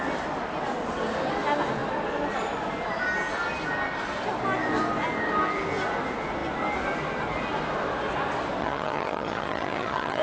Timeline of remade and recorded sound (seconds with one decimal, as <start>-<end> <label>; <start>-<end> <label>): 0.0-8.6 recorded; 8.6-10.2 remade